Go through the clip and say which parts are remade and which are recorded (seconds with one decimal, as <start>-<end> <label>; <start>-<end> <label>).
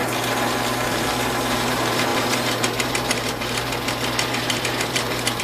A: 0.0-0.9 recorded; 0.9-5.4 remade